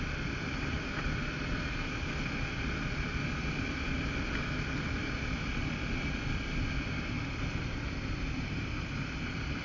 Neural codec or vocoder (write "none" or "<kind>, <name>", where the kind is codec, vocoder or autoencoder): vocoder, BigVGAN v2